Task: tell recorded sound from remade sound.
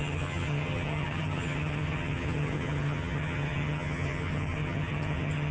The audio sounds remade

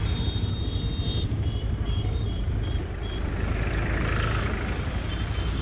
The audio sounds recorded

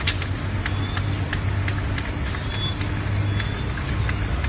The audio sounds recorded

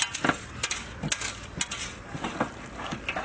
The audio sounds recorded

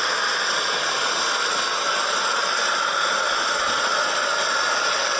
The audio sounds recorded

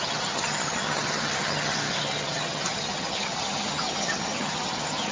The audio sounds remade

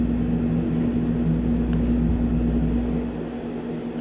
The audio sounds recorded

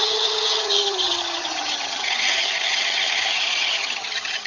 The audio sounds remade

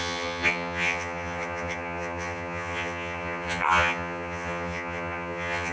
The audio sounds remade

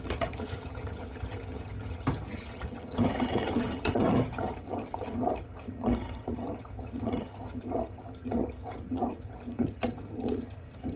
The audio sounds remade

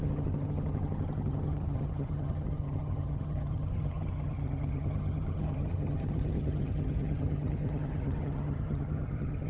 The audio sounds remade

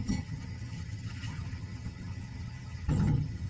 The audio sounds remade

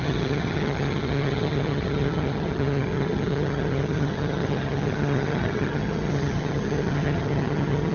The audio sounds remade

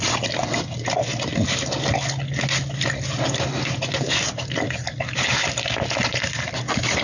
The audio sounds recorded